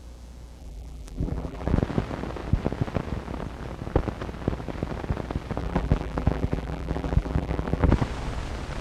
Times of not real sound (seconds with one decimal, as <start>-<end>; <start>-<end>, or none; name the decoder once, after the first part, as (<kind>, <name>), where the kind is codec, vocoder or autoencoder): 0.6-1.8 (vocoder, BigVGAN v2); 5.6-7.9